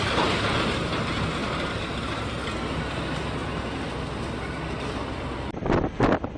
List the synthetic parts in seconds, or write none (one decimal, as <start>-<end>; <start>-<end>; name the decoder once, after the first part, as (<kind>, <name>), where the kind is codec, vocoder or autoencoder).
1.4-2.3 (vocoder, BigVGAN v2)